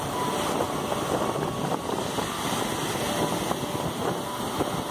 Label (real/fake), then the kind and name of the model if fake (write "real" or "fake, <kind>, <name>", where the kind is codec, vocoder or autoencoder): real